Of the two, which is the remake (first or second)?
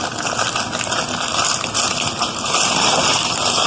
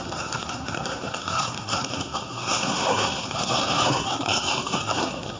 second